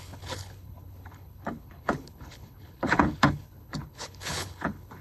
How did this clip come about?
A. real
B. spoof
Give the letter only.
B